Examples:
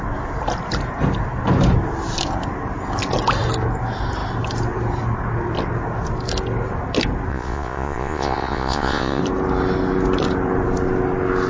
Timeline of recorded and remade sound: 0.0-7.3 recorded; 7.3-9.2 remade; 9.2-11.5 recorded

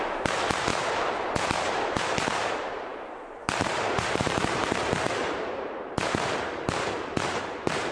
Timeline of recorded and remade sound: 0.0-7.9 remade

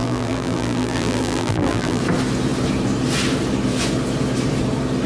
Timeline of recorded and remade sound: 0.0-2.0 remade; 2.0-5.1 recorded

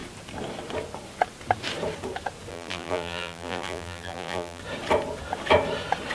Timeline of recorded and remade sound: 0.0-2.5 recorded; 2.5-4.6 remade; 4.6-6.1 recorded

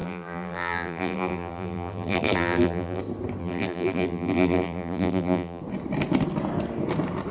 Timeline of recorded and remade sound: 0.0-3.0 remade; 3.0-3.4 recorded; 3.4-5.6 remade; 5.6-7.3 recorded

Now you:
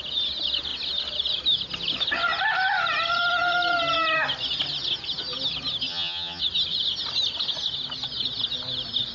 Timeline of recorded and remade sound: 0.0-5.9 recorded; 5.9-6.4 remade; 6.4-9.1 recorded

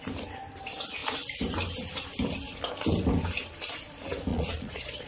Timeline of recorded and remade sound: 0.0-4.3 recorded; 4.3-5.1 remade